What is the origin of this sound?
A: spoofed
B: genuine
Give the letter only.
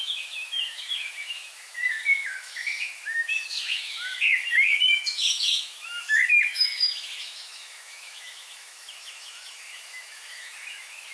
A